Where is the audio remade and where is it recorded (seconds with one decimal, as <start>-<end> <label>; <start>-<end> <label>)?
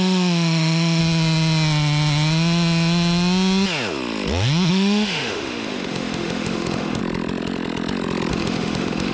0.0-1.0 remade; 1.0-4.7 recorded; 4.7-7.0 remade; 7.0-8.3 recorded; 8.3-9.1 remade